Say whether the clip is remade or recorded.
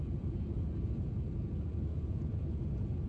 remade